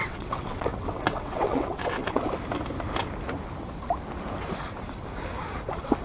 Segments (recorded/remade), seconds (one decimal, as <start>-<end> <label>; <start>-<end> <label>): 0.0-2.2 remade; 2.2-6.0 recorded